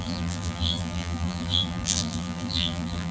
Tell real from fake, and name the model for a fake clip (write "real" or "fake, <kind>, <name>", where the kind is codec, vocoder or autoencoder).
fake, vocoder, BigVGAN v2